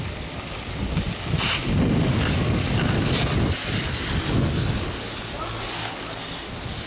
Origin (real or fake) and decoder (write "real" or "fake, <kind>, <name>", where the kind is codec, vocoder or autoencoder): real